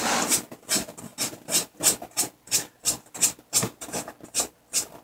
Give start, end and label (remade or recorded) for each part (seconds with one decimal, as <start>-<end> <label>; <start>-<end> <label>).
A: 0.0-5.0 recorded